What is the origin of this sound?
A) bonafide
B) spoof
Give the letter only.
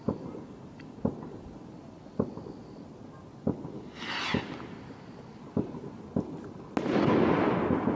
A